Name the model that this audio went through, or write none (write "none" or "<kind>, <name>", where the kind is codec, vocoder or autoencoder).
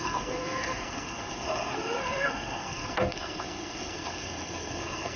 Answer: codec, SNAC